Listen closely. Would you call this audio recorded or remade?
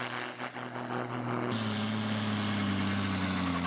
recorded